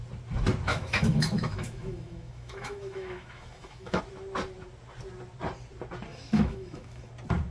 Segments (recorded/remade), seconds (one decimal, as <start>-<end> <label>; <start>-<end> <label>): 0.0-0.7 recorded; 0.7-4.0 remade; 4.0-6.1 recorded; 6.1-7.1 remade; 7.1-7.5 recorded

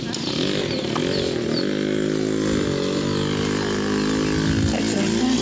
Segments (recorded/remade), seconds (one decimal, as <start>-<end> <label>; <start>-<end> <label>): 0.0-5.4 recorded

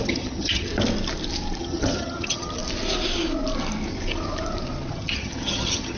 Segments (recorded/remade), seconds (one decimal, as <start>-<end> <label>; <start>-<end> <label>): 0.0-0.7 remade; 0.7-1.6 recorded; 1.6-2.6 remade; 2.6-4.9 recorded; 4.9-6.0 remade

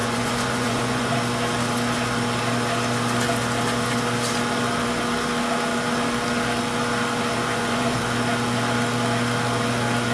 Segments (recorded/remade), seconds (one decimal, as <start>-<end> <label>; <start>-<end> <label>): 0.0-1.1 remade; 1.1-7.5 recorded; 7.5-8.0 remade; 8.0-10.1 recorded

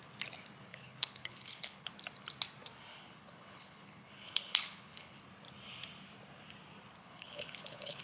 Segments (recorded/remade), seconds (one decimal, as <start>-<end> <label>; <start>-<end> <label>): 0.0-0.7 recorded; 0.7-1.9 remade; 1.9-2.9 recorded; 2.9-5.2 remade; 5.2-7.0 recorded; 7.0-8.0 remade

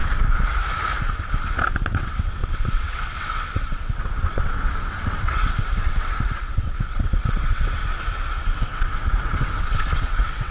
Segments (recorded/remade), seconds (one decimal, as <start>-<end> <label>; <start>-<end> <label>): 0.0-1.9 recorded; 1.9-7.8 remade; 7.8-8.6 recorded; 8.6-10.5 remade